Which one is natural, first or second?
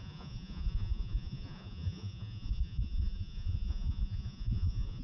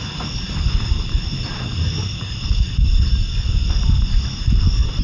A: second